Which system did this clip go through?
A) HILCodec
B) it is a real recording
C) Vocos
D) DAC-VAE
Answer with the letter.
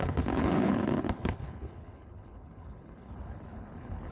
A